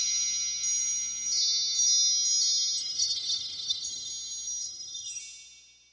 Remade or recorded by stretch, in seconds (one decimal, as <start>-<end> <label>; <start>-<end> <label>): 0.0-2.8 recorded; 2.8-4.1 remade; 4.1-4.6 recorded; 4.6-5.2 remade; 5.2-5.9 recorded